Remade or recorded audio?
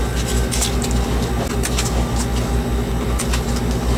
recorded